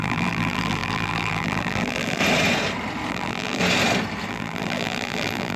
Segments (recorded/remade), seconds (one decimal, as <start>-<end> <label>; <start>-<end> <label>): 0.0-2.2 remade; 2.2-3.1 recorded; 3.1-3.6 remade; 3.6-4.3 recorded; 4.3-5.6 remade